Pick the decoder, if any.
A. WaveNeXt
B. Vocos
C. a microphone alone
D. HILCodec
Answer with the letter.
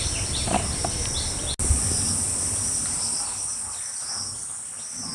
C